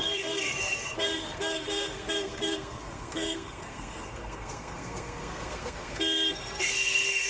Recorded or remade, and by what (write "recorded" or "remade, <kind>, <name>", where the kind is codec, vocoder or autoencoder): remade, codec, SNAC